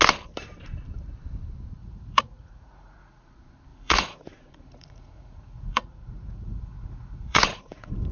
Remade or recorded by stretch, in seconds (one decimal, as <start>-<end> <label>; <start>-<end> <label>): 0.0-1.8 recorded; 1.8-3.3 remade; 3.3-3.7 recorded; 3.7-8.1 remade

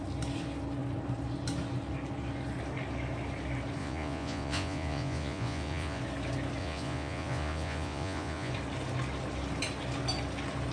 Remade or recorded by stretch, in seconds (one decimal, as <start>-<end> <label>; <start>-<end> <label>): 0.0-3.8 recorded; 3.8-6.0 remade; 6.0-6.6 recorded; 6.6-8.5 remade; 8.5-10.7 recorded

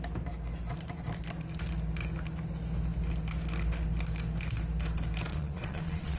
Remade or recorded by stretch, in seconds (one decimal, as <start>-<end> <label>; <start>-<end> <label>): 0.0-5.3 recorded; 5.3-6.2 remade

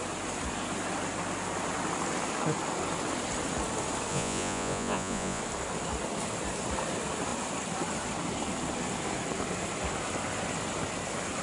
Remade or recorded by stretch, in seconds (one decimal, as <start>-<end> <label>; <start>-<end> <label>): 0.0-4.1 recorded; 4.1-5.4 remade; 5.4-11.4 recorded

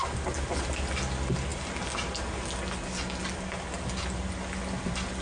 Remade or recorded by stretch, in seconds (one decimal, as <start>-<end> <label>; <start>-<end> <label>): 0.0-5.2 recorded

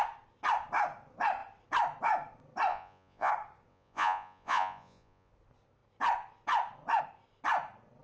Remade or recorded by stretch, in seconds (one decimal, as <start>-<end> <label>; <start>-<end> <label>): 0.0-2.7 recorded; 2.7-3.3 remade; 3.3-3.7 recorded; 3.7-5.3 remade; 5.3-8.0 recorded